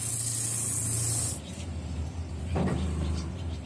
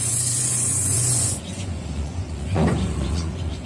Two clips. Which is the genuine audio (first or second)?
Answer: first